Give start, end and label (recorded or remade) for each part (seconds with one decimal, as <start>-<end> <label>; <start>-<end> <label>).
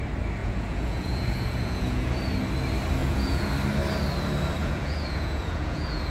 0.0-0.4 recorded; 0.4-2.1 remade; 2.1-3.0 recorded; 3.0-3.5 remade; 3.5-4.6 recorded; 4.6-6.1 remade